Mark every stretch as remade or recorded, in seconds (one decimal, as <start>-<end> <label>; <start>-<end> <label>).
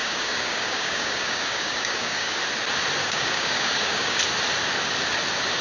0.0-2.4 remade; 2.4-3.0 recorded; 3.0-4.2 remade; 4.2-5.6 recorded